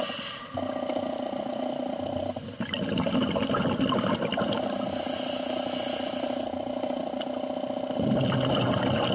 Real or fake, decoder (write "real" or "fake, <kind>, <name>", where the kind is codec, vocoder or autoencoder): real